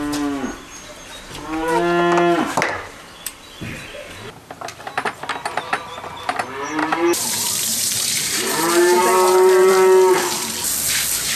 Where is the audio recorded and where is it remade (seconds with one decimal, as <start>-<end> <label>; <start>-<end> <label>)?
0.0-6.8 recorded; 6.8-9.7 remade; 9.7-11.4 recorded